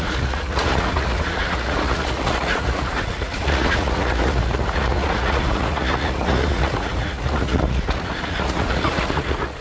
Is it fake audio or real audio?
fake